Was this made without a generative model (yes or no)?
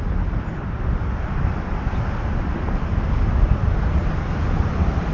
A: yes